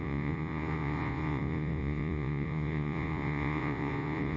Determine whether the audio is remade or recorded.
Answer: remade